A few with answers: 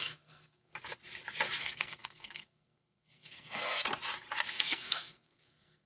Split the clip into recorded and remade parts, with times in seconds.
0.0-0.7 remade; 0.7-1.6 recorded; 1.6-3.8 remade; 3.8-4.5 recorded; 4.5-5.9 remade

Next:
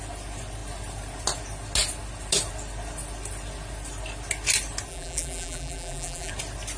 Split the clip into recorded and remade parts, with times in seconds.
0.0-4.9 recorded; 4.9-6.3 remade; 6.3-6.8 recorded